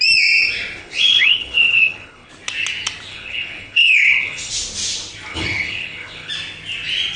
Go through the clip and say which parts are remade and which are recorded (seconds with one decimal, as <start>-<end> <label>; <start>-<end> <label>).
0.0-0.8 recorded; 0.8-2.3 remade; 2.3-3.1 recorded; 3.1-4.5 remade; 4.5-5.3 recorded; 5.3-6.3 remade; 6.3-7.2 recorded